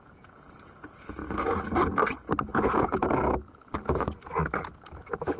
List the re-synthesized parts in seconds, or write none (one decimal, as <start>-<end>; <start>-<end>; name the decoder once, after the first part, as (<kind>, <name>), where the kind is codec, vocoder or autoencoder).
0.0-1.6 (vocoder, Vocos); 2.5-3.4